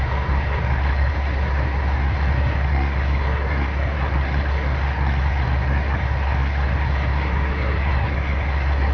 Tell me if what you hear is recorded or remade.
remade